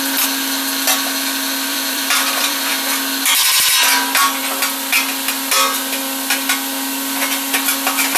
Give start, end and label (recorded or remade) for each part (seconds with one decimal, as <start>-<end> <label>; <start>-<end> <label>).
0.0-1.7 recorded; 1.7-2.7 remade; 2.7-8.2 recorded